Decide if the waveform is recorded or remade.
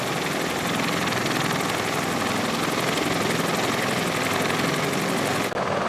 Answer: recorded